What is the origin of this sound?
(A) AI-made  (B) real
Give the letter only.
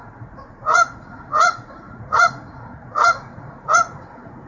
A